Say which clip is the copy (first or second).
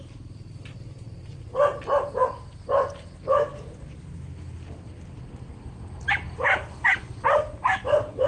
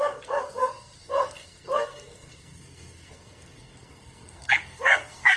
second